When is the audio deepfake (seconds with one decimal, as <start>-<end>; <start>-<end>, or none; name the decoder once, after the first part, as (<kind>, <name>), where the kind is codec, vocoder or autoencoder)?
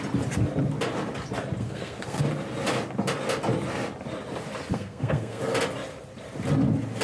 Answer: 1.6-2.2 (codec, SNAC); 4.7-5.4